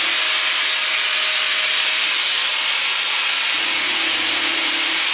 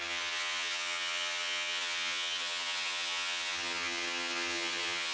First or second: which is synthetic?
second